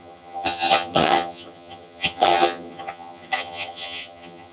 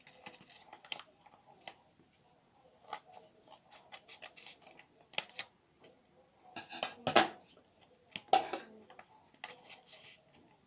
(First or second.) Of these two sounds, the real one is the second